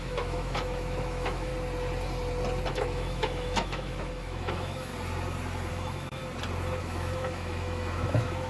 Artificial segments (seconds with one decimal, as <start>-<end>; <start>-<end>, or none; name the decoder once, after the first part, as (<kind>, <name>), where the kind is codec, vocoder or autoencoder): 0.0-1.5 (autoencoder, DAC-VAE); 2.7-4.9; 5.7-6.2; 6.8-8.5

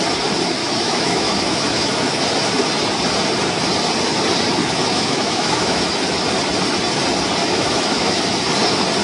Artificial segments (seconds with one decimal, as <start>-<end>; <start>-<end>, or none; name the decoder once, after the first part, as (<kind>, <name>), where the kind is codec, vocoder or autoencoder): 0.6-2.3 (autoencoder, DAC-VAE); 4.6-5.8; 7.4-8.2

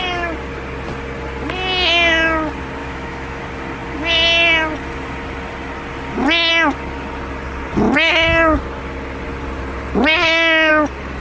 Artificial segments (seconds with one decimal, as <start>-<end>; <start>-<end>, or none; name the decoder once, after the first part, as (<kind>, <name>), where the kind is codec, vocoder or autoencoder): 2.8-3.4 (autoencoder, DAC-VAE)